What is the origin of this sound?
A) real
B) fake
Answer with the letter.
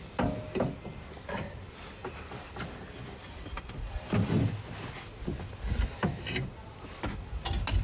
A